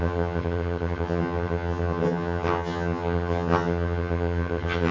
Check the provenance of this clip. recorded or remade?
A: remade